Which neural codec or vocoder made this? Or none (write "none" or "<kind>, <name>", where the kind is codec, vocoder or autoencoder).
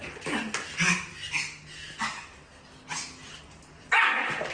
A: none